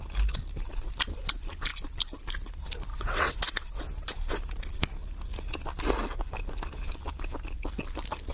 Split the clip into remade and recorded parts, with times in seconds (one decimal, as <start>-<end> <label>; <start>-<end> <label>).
0.0-2.9 recorded; 2.9-3.8 remade; 3.8-8.3 recorded